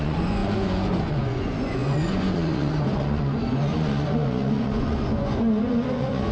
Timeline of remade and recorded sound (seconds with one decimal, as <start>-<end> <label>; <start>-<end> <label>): 0.0-6.3 remade